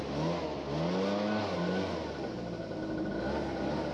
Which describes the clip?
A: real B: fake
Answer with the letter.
A